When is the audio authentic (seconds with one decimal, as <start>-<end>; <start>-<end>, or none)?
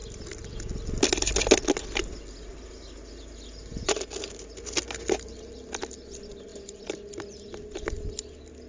0.0-8.7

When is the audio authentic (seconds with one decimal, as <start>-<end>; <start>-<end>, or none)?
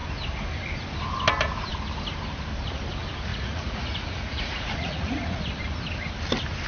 0.0-3.3; 5.4-6.7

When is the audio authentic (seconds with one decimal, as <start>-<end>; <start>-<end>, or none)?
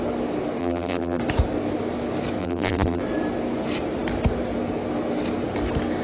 0.0-0.6; 1.2-2.4; 3.0-6.0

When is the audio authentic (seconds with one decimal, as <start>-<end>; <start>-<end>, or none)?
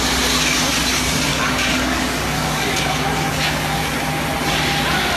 0.0-1.3; 3.8-5.2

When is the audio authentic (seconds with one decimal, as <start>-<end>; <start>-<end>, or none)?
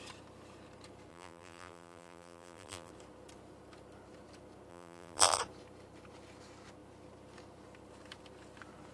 0.0-1.1; 2.9-4.7; 5.4-8.9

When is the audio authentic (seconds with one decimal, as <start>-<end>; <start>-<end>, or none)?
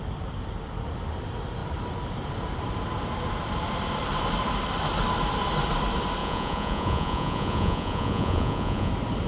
0.0-6.2; 8.9-9.3